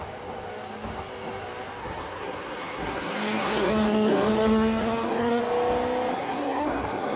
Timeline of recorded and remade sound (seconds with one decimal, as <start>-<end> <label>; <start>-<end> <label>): 0.0-1.8 recorded; 1.8-5.4 remade; 5.4-6.1 recorded; 6.1-7.2 remade